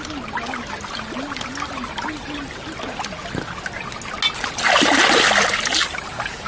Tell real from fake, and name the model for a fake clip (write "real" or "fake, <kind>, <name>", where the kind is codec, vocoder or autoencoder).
real